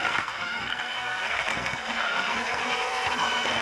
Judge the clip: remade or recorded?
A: remade